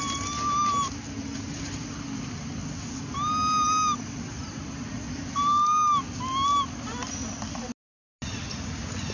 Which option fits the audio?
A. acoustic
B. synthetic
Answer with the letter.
A